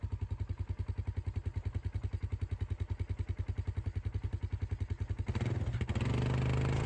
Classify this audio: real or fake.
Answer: real